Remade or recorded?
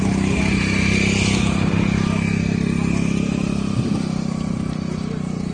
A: recorded